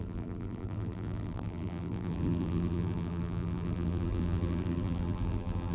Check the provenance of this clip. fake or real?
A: fake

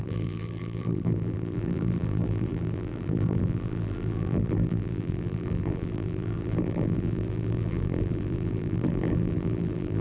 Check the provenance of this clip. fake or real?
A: fake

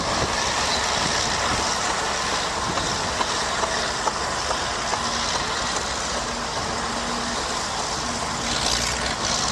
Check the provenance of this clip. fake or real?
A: real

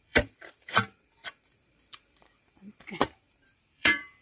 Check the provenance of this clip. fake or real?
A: fake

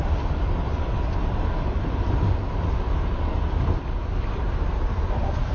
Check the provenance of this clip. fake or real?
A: fake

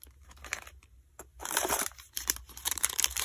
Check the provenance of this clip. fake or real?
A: fake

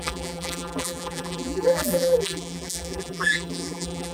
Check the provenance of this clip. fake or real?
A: fake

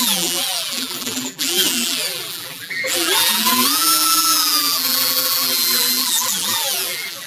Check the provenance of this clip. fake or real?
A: fake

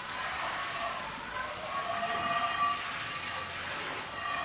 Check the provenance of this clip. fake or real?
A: real